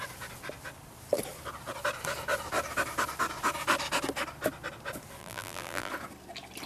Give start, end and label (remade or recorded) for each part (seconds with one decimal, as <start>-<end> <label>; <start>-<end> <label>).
0.0-5.2 recorded; 5.2-5.9 remade; 5.9-6.7 recorded